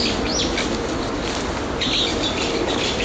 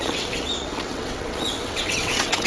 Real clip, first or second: first